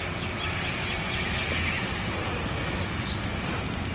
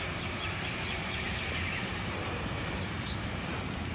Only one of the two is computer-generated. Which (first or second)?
second